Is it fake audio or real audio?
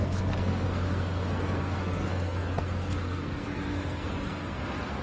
fake